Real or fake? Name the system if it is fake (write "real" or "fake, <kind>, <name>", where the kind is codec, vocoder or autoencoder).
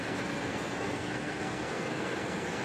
fake, codec, SNAC